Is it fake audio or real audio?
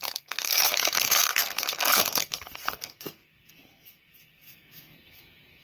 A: fake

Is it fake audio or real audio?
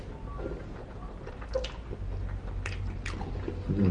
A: real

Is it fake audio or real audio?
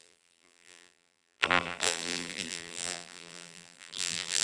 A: fake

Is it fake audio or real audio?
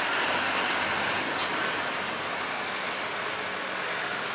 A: real